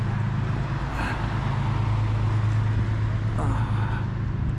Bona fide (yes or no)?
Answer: yes